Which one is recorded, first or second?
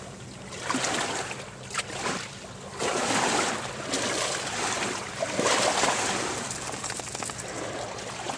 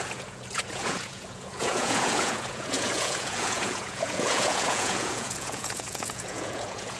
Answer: first